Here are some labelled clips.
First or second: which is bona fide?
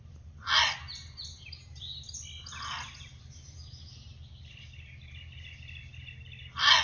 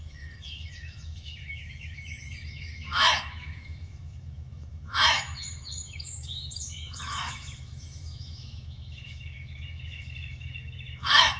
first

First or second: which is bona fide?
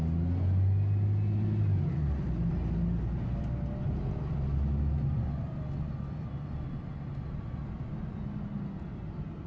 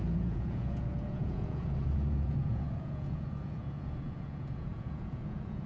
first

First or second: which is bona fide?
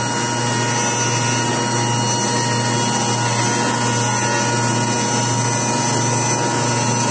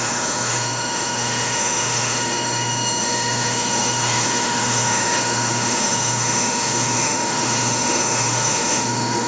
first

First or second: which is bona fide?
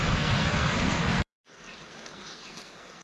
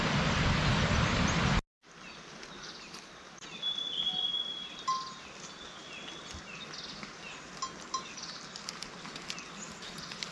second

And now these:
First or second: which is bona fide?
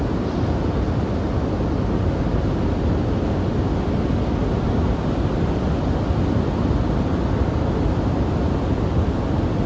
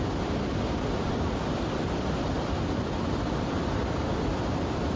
first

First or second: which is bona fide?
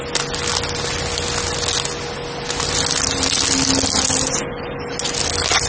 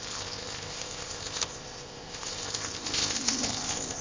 first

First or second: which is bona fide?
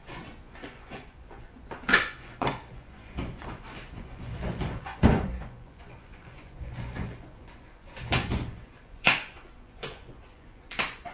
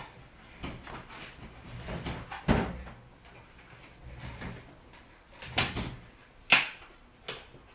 second